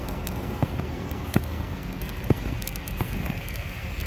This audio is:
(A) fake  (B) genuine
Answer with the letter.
A